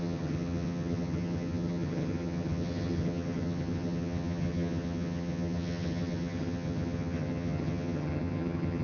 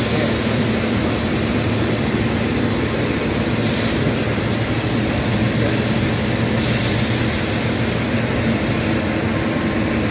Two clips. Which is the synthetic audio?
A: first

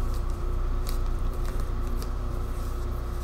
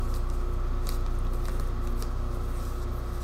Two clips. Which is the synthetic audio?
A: first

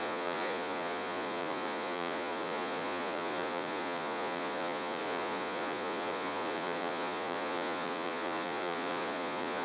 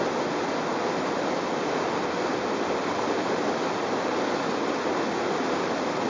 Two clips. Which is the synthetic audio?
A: first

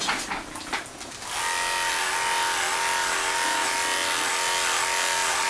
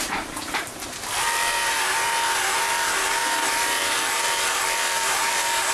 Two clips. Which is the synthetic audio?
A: second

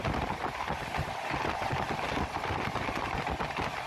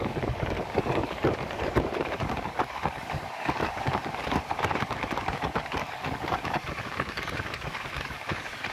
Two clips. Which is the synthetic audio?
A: second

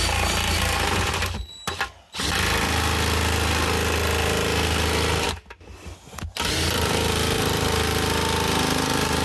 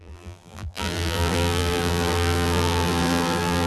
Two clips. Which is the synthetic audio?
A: second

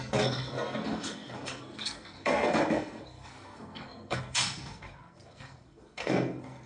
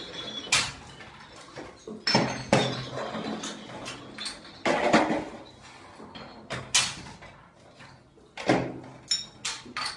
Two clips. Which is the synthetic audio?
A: first